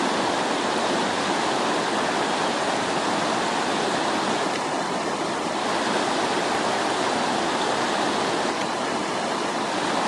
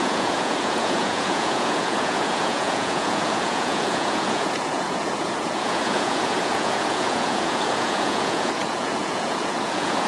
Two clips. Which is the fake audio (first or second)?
second